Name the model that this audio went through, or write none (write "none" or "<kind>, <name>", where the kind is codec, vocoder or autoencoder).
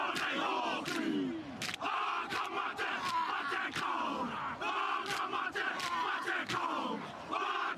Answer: none